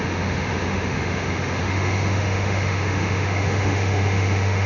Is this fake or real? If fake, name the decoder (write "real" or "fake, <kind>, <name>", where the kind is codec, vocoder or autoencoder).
fake, autoencoder, DAC-VAE